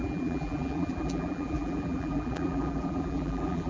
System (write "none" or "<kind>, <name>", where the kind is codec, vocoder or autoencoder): vocoder, BigVGAN v2